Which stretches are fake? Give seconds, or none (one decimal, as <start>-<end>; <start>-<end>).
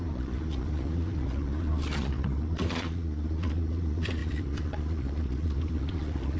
0.0-6.4